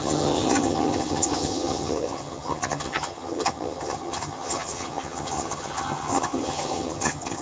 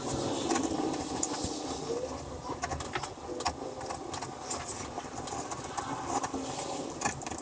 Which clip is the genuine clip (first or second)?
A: second